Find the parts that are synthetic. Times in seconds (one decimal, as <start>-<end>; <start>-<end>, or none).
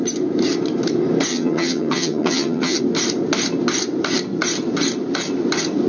1.3-2.8